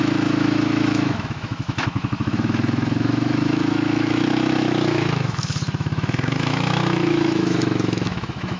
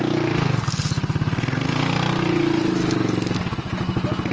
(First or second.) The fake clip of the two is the first